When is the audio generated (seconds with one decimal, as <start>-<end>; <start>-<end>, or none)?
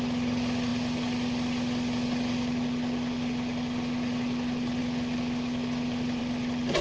none